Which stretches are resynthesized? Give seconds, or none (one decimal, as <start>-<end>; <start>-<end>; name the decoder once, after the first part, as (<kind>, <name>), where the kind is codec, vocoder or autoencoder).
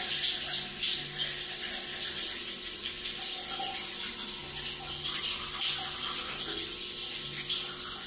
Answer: none